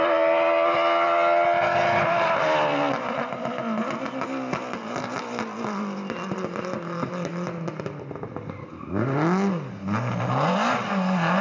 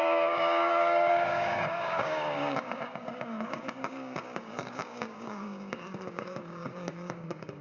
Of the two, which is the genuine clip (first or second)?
first